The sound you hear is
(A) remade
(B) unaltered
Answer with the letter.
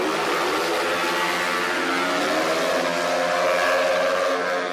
B